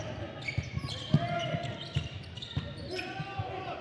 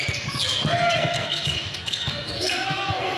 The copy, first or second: second